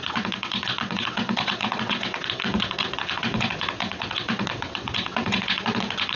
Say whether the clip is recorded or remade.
remade